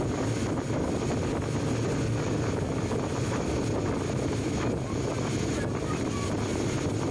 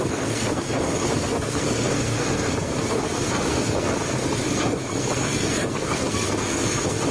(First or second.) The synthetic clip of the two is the second